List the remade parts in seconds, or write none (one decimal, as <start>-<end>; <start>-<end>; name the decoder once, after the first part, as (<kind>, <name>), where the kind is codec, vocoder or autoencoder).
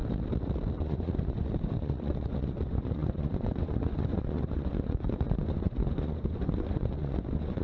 0.8-7.6 (vocoder, Vocos)